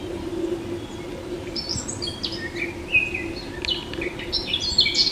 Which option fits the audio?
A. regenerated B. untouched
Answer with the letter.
B